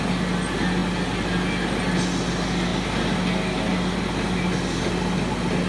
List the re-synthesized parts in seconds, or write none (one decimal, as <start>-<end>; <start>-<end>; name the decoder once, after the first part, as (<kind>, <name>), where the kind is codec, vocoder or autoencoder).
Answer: none